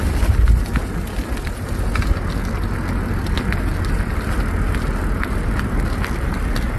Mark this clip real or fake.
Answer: real